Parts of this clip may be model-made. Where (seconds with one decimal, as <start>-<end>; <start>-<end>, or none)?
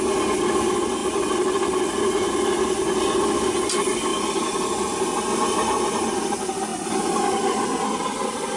6.7-7.3